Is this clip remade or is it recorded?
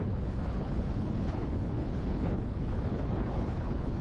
remade